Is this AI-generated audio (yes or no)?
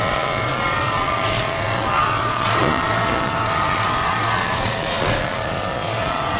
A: yes